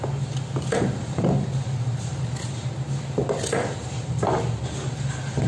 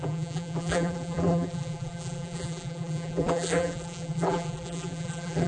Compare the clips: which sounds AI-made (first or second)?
second